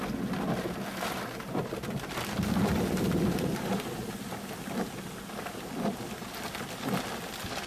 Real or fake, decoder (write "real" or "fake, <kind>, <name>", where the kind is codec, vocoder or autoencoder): real